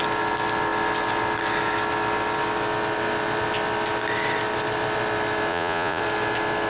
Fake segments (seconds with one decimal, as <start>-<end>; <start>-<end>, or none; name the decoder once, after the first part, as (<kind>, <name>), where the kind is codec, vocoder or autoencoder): 5.5-6.0 (vocoder, Vocos)